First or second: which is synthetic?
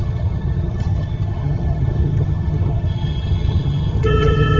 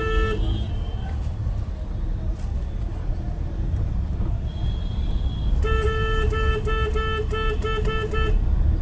first